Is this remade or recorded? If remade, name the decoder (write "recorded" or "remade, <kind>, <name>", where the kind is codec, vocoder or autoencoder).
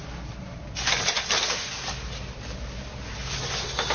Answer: recorded